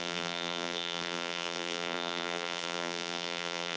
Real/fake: fake